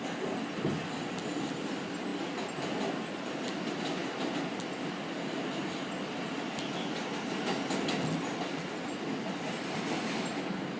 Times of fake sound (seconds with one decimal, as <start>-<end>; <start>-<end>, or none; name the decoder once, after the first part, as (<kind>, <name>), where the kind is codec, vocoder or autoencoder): none